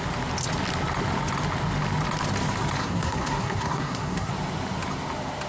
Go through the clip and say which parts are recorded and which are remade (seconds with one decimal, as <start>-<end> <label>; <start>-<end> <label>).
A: 0.0-2.8 recorded; 2.8-4.3 remade; 4.3-5.5 recorded